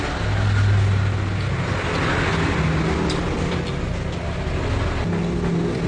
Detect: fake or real real